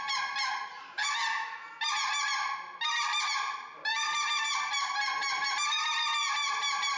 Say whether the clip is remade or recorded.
recorded